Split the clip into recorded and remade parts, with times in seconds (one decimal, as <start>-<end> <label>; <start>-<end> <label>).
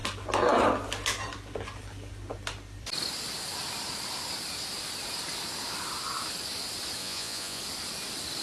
0.0-7.0 recorded; 7.0-7.6 remade; 7.6-8.4 recorded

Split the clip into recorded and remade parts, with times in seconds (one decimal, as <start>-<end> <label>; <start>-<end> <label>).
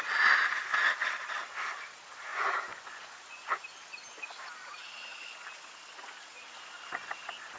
0.0-2.3 recorded; 2.3-3.5 remade; 3.5-7.6 recorded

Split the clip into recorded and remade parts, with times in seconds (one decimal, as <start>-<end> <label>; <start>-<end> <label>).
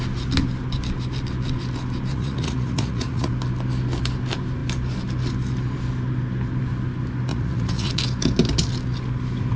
0.0-2.1 recorded; 2.1-3.3 remade; 3.3-7.3 recorded; 7.3-8.0 remade; 8.0-9.6 recorded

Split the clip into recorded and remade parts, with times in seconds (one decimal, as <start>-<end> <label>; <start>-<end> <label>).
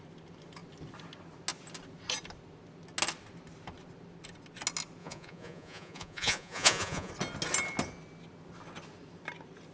0.0-5.0 recorded; 5.0-7.1 remade; 7.1-9.7 recorded